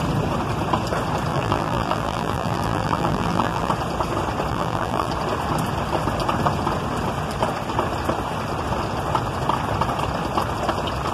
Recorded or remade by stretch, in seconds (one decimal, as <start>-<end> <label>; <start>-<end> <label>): 0.0-1.3 recorded; 1.3-3.7 remade; 3.7-4.5 recorded; 4.5-5.1 remade; 5.1-11.1 recorded